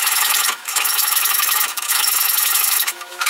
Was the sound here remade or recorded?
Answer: remade